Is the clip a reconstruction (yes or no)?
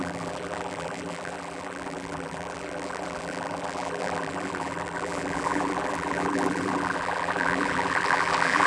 yes